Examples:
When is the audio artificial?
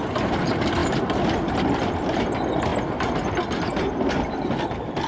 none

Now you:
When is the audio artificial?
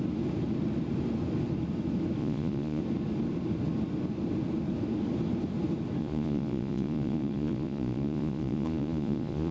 2.2-2.8 (vocoder, Vocos); 6.0-9.5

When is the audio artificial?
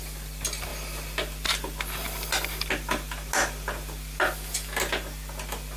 none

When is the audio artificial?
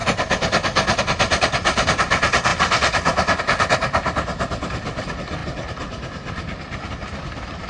0.0-5.4 (vocoder, BigVGAN v2); 6.9-7.7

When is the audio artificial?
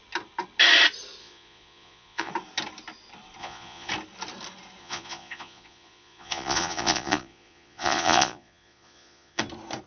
1.2-2.3 (vocoder, Vocos); 3.4-3.9; 4.8-9.4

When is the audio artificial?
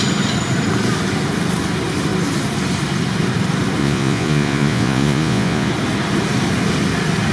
3.8-5.7 (vocoder, Vocos)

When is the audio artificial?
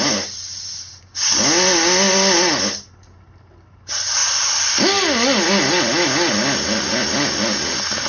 none